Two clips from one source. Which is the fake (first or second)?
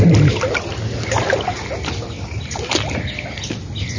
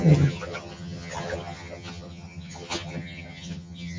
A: second